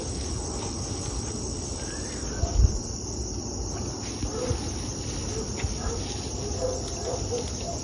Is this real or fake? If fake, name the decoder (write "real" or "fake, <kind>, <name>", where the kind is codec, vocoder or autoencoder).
real